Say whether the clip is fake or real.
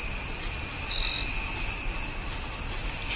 real